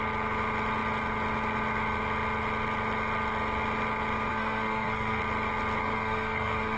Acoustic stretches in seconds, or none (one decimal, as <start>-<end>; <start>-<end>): 0.0-4.3; 5.2-5.8